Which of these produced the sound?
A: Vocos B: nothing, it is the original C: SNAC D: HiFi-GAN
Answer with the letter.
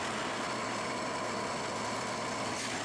B